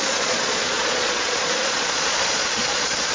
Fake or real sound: fake